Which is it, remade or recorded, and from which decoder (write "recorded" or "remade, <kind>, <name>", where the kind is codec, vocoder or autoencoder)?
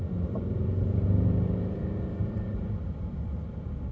remade, vocoder, BigVGAN v2